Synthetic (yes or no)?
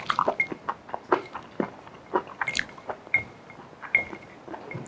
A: no